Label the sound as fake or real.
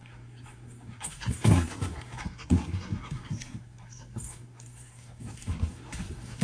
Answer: fake